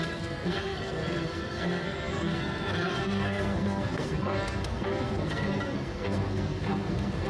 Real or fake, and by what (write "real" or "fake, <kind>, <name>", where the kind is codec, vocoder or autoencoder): fake, codec, SNAC